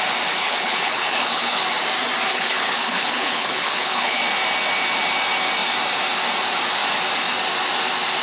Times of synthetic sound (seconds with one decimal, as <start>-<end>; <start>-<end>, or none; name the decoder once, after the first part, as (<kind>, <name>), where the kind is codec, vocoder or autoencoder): 0.4-1.6 (codec, HILCodec); 2.3-4.2